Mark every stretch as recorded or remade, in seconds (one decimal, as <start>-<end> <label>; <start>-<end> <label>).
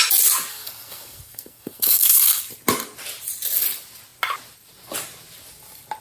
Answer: 0.0-0.5 recorded; 0.5-2.4 remade; 2.4-6.0 recorded